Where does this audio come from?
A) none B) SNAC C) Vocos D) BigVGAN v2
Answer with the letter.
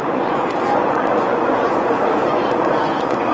C